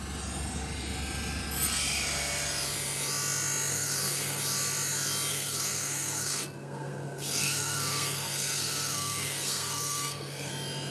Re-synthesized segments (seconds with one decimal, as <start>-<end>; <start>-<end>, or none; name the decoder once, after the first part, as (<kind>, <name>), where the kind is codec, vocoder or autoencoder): 3.7-4.4 (codec, SNAC); 5.3-10.5